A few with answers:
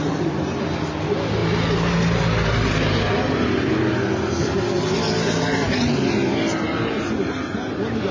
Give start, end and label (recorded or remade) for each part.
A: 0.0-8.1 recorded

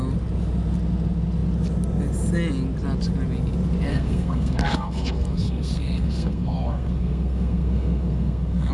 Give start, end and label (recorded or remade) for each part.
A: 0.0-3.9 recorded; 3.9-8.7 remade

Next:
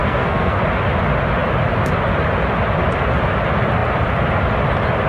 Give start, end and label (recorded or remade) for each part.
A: 0.0-0.6 remade; 0.6-5.1 recorded

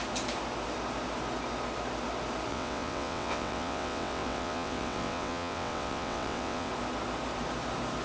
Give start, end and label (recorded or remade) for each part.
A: 0.0-2.5 recorded; 2.5-6.7 remade; 6.7-8.0 recorded